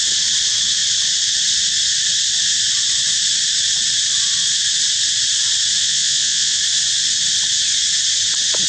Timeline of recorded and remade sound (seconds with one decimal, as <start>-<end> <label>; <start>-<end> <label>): 0.0-5.8 recorded; 5.8-6.6 remade; 6.6-8.7 recorded